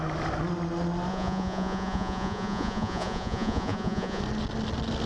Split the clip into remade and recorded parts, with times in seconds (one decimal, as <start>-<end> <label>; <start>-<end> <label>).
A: 0.0-1.1 recorded; 1.1-4.2 remade; 4.2-5.1 recorded